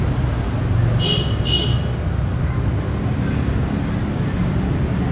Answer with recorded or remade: recorded